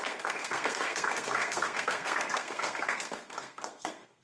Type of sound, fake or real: fake